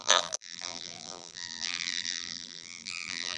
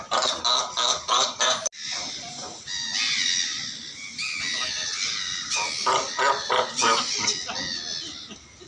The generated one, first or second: first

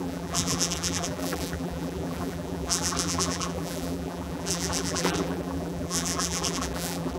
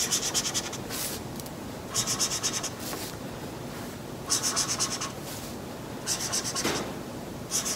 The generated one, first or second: first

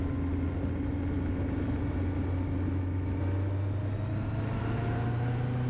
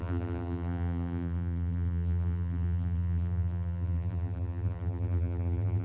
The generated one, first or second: second